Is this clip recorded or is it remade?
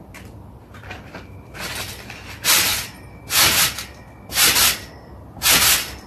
recorded